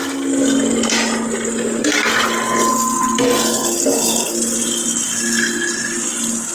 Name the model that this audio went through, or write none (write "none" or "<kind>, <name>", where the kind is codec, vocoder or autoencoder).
none